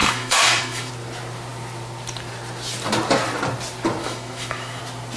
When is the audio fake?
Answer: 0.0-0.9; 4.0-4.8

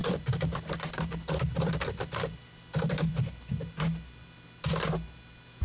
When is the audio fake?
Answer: 0.0-3.3

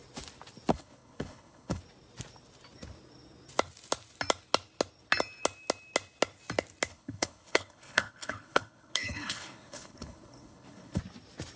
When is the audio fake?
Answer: 0.7-1.8; 6.9-11.0

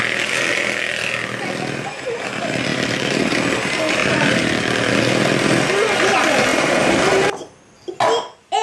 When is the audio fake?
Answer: 2.7-3.4; 4.0-4.5; 6.5-7.0